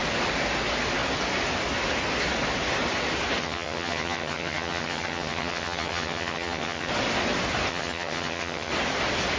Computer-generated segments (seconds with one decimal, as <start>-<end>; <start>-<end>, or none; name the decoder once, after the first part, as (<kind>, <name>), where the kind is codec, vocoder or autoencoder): 3.4-6.9 (vocoder, HiFi-GAN); 7.7-8.7